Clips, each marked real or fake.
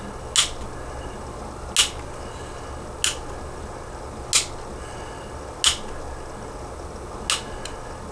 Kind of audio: real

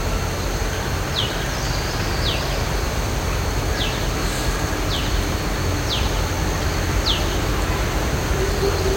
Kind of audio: real